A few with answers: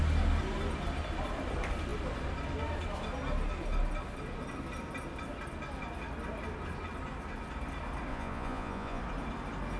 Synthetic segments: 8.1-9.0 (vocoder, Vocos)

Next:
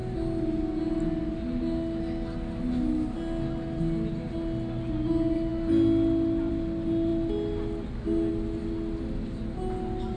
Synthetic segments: none

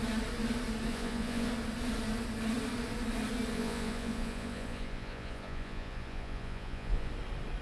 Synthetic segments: 0.9-1.5 (vocoder, Vocos); 3.5-7.1

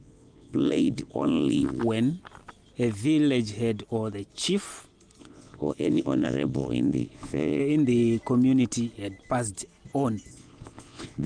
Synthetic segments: 0.0-1.8 (vocoder, Vocos); 5.2-7.6; 10.3-11.3

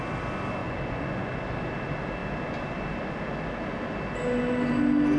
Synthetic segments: 0.6-1.3 (vocoder, Vocos)

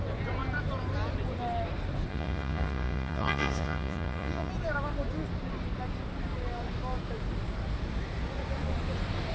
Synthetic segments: 2.1-4.5 (vocoder, Vocos)